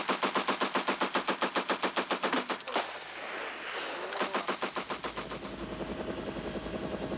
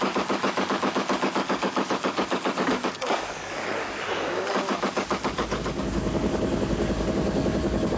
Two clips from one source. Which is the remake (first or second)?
second